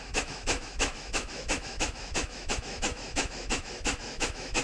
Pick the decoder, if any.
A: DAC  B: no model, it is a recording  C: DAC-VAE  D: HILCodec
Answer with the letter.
C